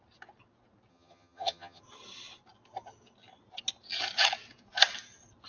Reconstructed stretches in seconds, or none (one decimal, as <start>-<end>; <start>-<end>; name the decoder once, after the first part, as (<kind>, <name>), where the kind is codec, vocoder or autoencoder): 0.9-1.8 (vocoder, HiFi-GAN)